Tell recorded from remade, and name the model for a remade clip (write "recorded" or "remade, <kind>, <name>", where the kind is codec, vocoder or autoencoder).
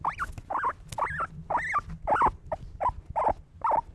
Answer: recorded